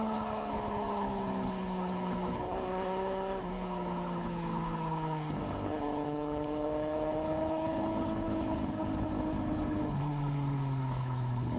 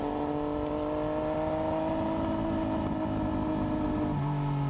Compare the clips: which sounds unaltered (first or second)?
second